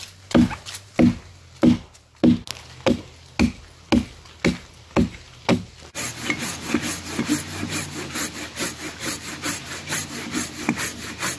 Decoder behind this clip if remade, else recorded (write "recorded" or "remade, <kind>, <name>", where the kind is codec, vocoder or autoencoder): recorded